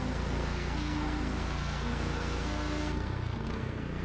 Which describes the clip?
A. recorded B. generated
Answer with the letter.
B